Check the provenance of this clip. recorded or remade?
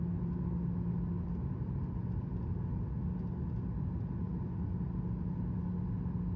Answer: recorded